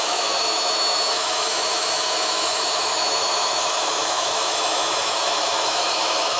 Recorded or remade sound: remade